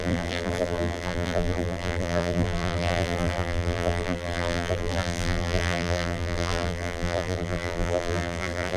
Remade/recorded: remade